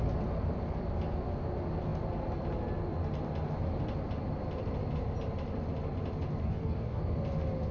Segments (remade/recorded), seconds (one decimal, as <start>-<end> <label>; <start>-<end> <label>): 0.0-6.4 recorded; 6.4-7.0 remade; 7.0-7.7 recorded

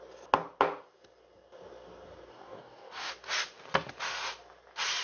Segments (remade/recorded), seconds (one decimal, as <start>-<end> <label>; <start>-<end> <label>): 0.0-2.3 recorded; 2.3-3.1 remade; 3.1-5.0 recorded

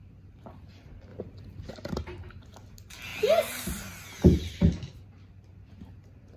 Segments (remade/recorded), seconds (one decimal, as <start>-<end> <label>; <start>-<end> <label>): 0.0-6.4 recorded

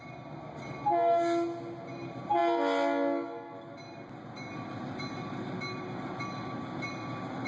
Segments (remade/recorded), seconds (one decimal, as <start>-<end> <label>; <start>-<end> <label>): 0.0-7.5 recorded

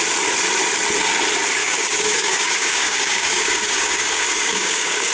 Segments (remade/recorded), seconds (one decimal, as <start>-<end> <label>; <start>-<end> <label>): 0.0-1.6 recorded; 1.6-5.1 remade

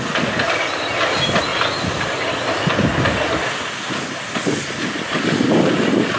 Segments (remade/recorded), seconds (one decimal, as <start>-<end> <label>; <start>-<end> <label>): 0.0-6.2 recorded